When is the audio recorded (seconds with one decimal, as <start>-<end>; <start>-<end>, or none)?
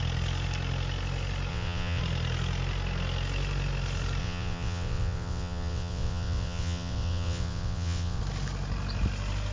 0.0-1.5; 2.0-4.2; 8.2-9.5